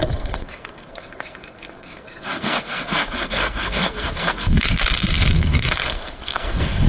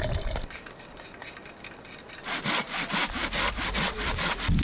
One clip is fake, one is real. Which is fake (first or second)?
first